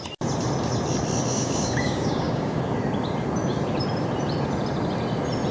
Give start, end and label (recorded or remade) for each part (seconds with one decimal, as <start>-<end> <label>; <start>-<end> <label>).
0.0-1.3 recorded; 1.3-2.6 remade; 2.6-5.5 recorded